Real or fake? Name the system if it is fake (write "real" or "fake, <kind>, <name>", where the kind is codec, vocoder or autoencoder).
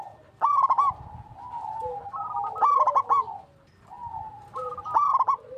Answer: real